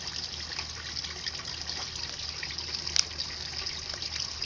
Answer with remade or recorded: recorded